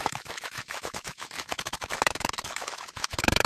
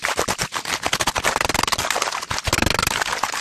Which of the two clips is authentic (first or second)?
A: second